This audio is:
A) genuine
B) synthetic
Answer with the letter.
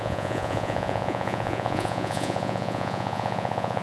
B